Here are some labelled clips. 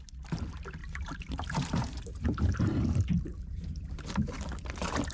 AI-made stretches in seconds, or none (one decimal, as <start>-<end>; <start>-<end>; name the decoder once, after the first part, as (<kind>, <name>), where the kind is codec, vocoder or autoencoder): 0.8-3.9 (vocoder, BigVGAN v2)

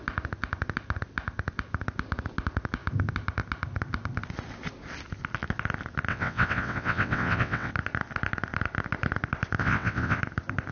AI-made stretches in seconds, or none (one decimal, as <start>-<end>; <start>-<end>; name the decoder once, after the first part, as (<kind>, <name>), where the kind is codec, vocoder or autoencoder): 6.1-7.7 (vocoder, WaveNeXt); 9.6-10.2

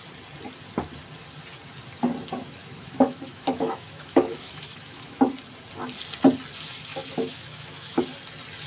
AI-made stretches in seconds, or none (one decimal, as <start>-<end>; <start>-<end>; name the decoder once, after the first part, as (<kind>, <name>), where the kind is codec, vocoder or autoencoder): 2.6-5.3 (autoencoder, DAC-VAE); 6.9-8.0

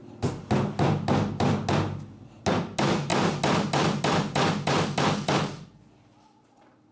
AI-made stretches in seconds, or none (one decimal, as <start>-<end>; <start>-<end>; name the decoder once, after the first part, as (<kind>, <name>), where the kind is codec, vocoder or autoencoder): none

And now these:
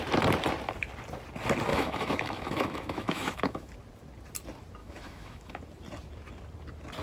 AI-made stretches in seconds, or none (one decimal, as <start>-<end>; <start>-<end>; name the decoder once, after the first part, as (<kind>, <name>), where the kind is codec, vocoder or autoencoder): 1.7-3.7 (autoencoder, DAC-VAE); 4.8-5.6

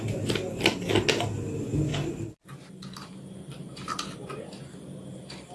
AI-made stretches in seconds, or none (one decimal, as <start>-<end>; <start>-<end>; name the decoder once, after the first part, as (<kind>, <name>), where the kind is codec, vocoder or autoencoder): 1.9-3.1 (vocoder, BigVGAN v2); 3.6-4.4